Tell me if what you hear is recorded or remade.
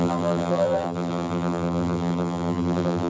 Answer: remade